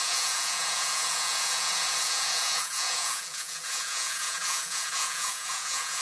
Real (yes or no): no